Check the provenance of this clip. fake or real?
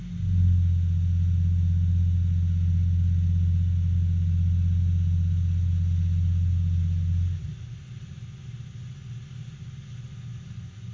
real